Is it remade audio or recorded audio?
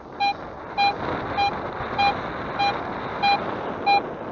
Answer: recorded